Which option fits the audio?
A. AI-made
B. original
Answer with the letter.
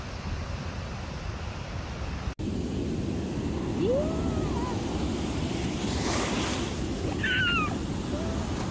B